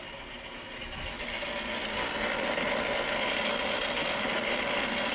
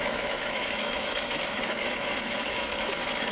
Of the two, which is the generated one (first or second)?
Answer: second